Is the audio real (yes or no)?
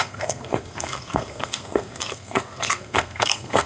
no